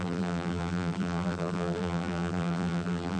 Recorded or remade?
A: remade